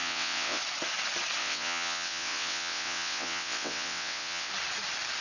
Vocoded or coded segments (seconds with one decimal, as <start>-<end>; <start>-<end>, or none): 0.0-0.6; 1.4-4.5